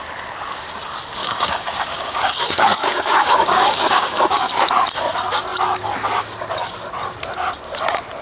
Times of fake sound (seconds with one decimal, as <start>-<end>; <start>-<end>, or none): 1.2-4.6